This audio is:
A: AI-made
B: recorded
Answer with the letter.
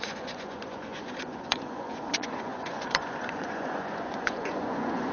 A